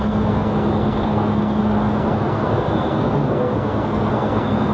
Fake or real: fake